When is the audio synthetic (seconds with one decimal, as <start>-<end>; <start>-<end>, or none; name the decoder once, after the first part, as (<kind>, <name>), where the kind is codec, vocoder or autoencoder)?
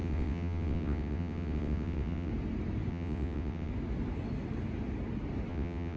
0.0-2.3 (vocoder, WaveNeXt); 2.9-3.7; 5.5-6.0